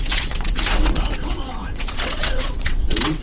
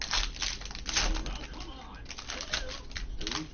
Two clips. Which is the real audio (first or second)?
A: second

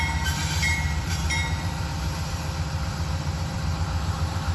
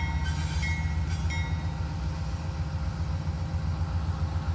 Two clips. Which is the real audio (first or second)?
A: second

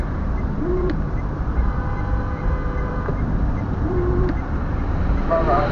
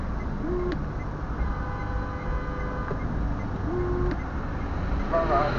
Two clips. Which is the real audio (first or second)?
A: second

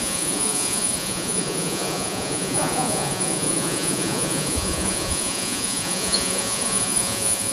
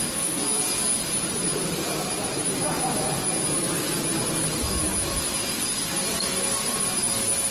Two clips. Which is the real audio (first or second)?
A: second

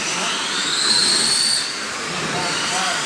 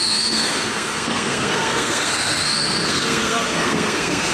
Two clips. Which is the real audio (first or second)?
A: first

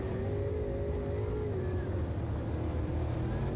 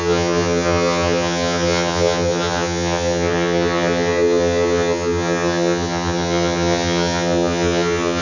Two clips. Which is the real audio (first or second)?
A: first